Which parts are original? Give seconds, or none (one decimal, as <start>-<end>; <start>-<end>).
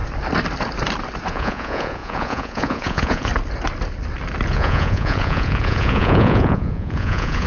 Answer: 0.0-1.3; 3.3-4.5